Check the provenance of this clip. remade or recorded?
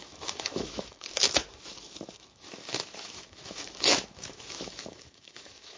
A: remade